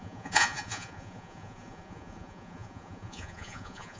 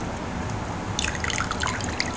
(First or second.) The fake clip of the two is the first